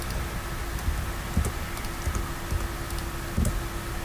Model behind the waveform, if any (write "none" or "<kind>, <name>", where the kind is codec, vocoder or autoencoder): none